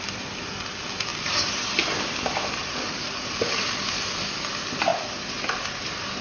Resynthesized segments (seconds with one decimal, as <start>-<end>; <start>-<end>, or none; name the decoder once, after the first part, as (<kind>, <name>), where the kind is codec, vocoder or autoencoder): 2.4-3.3 (vocoder, BigVGAN v2)